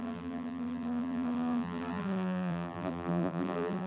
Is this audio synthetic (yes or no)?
yes